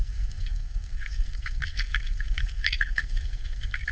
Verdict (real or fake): fake